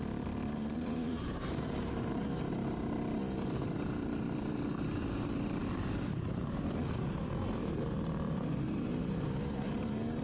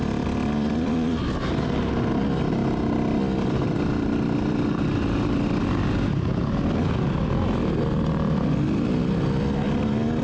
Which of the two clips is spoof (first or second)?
first